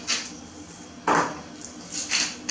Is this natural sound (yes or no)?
yes